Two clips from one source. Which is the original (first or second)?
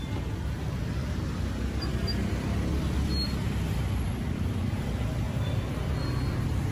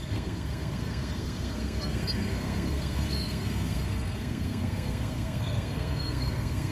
first